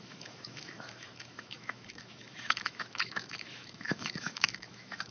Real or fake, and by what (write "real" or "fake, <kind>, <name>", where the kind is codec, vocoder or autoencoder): fake, autoencoder, DAC-VAE